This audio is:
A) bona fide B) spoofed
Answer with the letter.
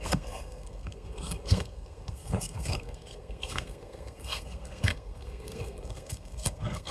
B